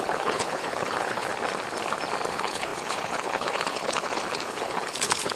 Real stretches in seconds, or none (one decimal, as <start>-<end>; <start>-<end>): 1.3-2.3